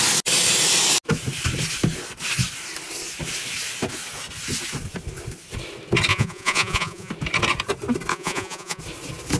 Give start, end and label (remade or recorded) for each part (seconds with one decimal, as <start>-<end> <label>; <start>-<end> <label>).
0.0-6.1 recorded; 6.1-7.1 remade; 7.1-8.1 recorded; 8.1-8.8 remade; 8.8-9.4 recorded